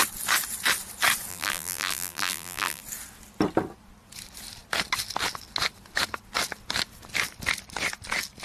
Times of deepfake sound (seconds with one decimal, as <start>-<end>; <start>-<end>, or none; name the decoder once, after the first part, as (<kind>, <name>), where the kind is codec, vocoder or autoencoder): 1.3-2.8 (vocoder, BigVGAN v2)